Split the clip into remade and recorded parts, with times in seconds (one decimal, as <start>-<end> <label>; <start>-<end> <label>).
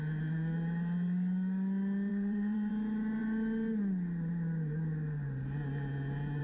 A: 0.0-2.1 recorded; 2.1-2.7 remade; 2.7-6.4 recorded